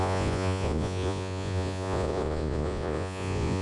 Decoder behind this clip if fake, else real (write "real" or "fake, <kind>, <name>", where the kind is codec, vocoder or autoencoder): fake, vocoder, Vocos